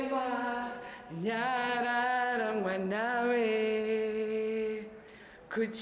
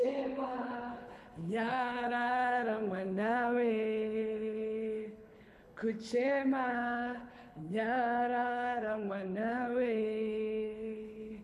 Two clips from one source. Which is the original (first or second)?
first